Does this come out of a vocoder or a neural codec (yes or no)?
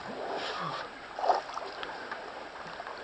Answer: no